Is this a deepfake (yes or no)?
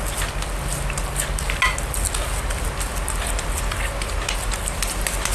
no